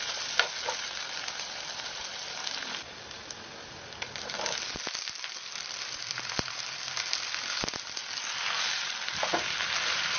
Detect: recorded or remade recorded